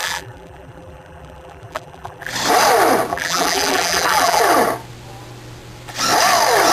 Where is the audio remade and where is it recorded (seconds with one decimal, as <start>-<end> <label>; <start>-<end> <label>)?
0.0-2.3 remade; 2.3-3.1 recorded; 3.1-4.4 remade; 4.4-6.7 recorded